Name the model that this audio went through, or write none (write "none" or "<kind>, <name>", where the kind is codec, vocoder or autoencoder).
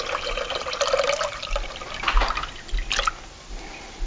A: none